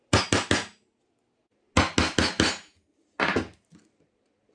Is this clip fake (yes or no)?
no